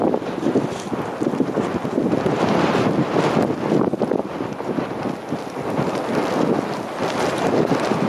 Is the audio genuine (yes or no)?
yes